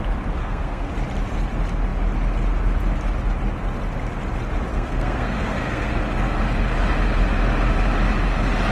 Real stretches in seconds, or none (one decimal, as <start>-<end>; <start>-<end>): 0.0-0.4; 0.9-4.7; 5.9-8.7